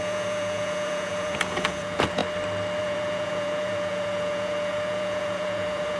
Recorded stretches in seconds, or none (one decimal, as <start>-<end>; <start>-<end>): 2.2-2.8